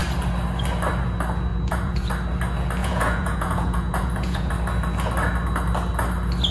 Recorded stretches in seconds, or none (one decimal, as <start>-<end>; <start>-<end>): 0.0-1.5; 2.1-2.8; 4.5-6.5

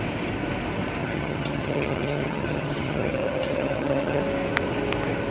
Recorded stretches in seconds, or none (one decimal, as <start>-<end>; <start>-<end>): 0.0-1.0; 4.2-5.3